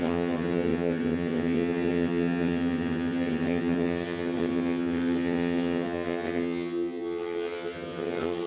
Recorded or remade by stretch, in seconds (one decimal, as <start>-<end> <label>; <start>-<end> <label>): 0.0-8.5 remade